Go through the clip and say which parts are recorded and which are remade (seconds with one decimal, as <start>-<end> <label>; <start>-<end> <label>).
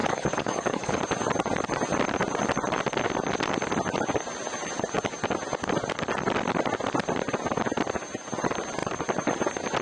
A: 0.0-1.0 remade; 1.0-9.8 recorded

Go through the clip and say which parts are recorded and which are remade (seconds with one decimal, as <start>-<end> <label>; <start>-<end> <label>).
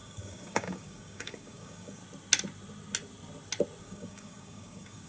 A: 0.0-2.0 remade; 2.0-3.8 recorded; 3.8-5.1 remade